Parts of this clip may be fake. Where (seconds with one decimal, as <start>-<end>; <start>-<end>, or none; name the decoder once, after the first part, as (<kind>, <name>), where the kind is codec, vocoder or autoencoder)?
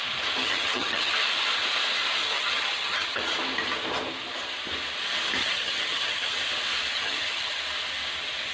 0.4-1.1 (vocoder, HiFi-GAN); 2.2-3.2; 5.4-6.3; 6.9-7.6